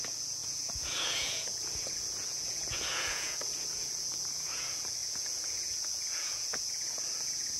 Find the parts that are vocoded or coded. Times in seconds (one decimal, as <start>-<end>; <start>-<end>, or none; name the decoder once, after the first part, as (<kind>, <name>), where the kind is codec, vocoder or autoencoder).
0.0-7.6 (vocoder, Vocos)